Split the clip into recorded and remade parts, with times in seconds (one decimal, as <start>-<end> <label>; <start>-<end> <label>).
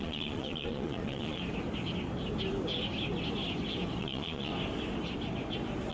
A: 0.0-1.4 remade; 1.4-4.0 recorded; 4.0-4.5 remade; 4.5-5.9 recorded